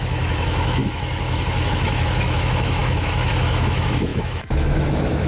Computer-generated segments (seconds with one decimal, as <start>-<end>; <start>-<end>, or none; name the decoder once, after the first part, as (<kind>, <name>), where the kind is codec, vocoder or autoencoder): 0.0-5.3 (autoencoder, DAC-VAE)